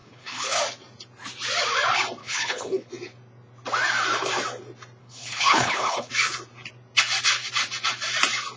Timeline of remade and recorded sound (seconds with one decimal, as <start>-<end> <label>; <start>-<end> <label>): 0.0-0.6 remade; 0.6-2.2 recorded; 2.2-2.9 remade; 2.9-5.0 recorded; 5.0-6.1 remade; 6.1-8.6 recorded